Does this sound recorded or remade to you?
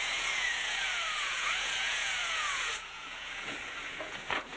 remade